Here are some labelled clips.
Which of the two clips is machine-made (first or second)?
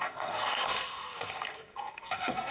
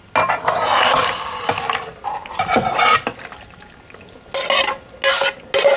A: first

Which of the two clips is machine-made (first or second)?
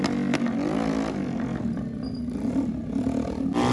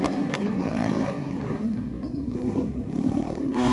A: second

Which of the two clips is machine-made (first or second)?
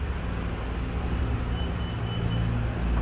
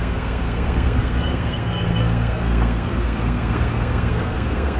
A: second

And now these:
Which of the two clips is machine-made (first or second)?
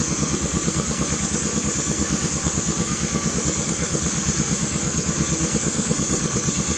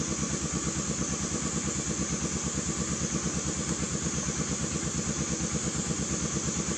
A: first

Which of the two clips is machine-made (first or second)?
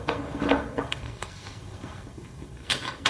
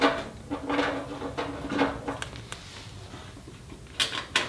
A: first